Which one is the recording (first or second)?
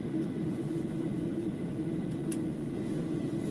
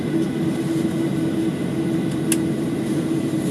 second